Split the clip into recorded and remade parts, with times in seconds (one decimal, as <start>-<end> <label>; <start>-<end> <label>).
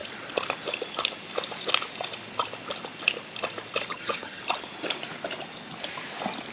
0.0-3.9 recorded; 3.9-4.4 remade; 4.4-6.5 recorded